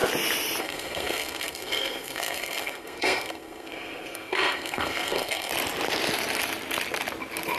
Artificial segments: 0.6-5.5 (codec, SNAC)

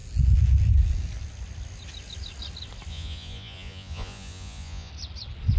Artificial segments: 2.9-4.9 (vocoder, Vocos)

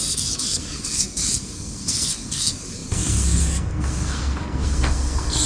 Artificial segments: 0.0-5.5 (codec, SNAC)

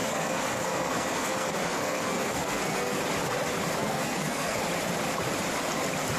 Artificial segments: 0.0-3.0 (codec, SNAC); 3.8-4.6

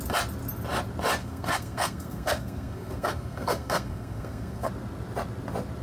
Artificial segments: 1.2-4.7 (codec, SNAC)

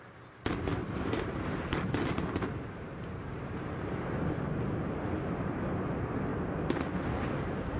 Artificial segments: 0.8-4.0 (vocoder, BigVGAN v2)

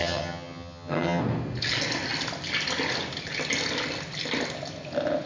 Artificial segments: 0.0-1.2 (vocoder, HiFi-GAN)

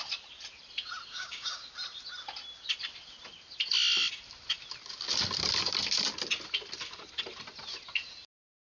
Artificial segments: 1.1-1.7 (codec, DAC)